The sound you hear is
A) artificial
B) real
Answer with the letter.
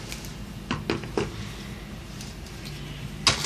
B